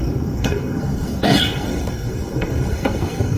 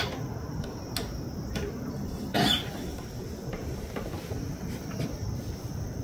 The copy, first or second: first